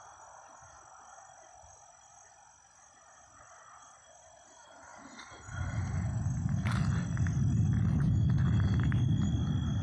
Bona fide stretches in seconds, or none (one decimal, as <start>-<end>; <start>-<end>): 0.0-9.8